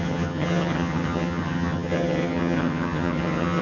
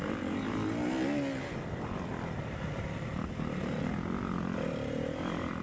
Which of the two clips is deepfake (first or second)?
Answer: first